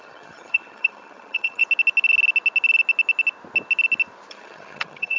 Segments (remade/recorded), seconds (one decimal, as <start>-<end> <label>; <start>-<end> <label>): 0.0-1.6 remade; 1.6-4.3 recorded; 4.3-5.2 remade

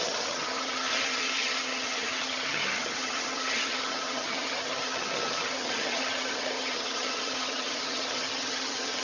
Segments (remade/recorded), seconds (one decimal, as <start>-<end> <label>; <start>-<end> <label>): 0.0-9.0 remade

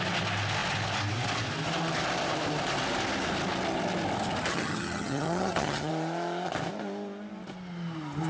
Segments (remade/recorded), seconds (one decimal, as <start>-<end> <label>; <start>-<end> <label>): 0.0-4.5 recorded; 4.5-5.9 remade; 5.9-8.3 recorded

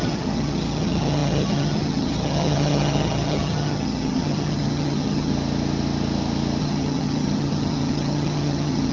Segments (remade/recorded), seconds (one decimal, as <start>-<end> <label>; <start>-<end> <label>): 0.0-5.3 remade; 5.3-6.6 recorded; 6.6-8.9 remade

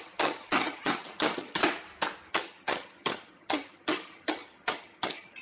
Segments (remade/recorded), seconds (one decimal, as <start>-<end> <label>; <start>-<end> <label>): 0.0-1.6 remade; 1.6-2.3 recorded; 2.3-5.4 remade

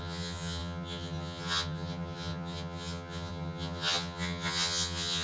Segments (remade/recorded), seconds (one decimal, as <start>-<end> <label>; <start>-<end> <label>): 0.0-5.2 remade

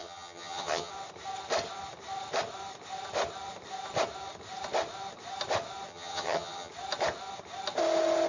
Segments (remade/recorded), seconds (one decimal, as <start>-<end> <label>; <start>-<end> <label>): 0.0-0.9 remade; 0.9-5.9 recorded; 5.9-6.7 remade; 6.7-8.3 recorded